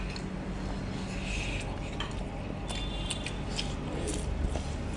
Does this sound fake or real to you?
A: real